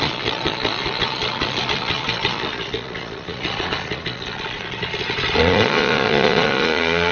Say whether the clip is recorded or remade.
remade